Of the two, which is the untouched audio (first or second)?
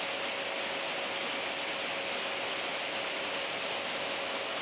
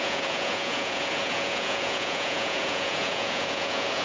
first